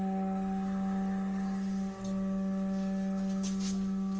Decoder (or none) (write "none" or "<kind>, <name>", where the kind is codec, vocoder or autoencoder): none